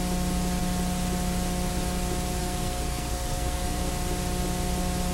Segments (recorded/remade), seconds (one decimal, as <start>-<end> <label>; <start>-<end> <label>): 0.0-2.4 recorded; 2.4-3.9 remade; 3.9-5.1 recorded